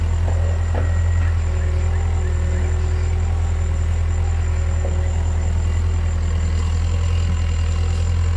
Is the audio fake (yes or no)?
no